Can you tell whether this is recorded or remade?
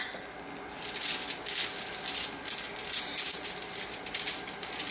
recorded